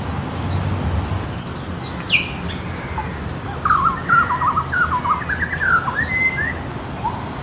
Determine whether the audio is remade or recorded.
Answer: recorded